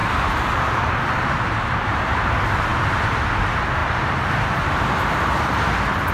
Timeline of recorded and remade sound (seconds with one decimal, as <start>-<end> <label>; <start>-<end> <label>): 0.0-2.7 remade; 2.7-3.4 recorded; 3.4-6.1 remade